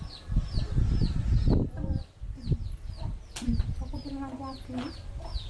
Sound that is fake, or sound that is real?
real